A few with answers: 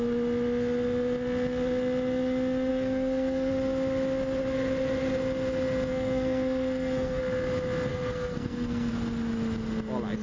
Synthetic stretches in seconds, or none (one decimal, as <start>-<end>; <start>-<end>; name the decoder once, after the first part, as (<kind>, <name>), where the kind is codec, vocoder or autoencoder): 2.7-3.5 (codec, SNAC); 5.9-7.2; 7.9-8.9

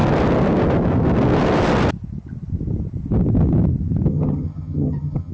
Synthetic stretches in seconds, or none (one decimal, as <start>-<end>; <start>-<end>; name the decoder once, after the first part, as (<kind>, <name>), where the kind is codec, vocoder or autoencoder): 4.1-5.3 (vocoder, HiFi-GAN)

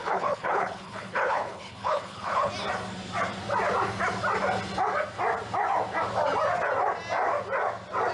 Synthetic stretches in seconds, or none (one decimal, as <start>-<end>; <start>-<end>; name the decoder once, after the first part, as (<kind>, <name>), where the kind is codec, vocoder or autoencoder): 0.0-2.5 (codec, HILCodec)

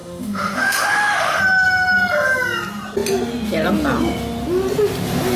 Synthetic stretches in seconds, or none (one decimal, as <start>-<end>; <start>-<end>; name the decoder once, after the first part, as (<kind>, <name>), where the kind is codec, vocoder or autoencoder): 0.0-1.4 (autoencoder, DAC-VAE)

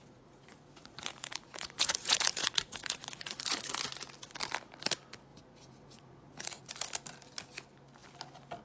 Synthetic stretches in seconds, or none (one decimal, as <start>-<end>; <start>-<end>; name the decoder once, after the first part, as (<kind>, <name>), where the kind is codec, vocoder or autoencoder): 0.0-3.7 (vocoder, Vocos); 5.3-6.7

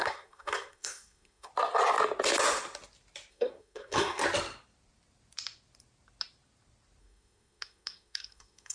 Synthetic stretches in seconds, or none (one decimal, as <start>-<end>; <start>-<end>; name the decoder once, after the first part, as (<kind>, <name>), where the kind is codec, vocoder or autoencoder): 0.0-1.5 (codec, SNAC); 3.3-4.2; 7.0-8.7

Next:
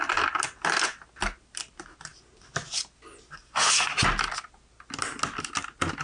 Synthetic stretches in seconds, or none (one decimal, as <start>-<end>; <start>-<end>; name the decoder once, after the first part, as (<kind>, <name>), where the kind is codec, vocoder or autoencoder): none